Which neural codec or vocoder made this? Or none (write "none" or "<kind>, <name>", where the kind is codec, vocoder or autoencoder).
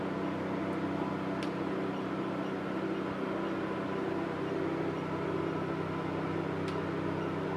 none